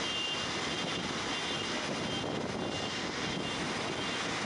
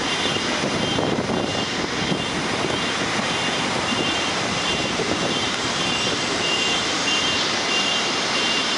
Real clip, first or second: first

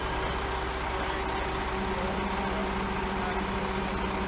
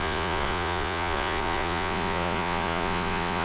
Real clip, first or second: first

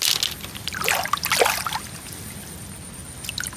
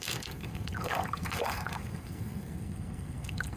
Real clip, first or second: first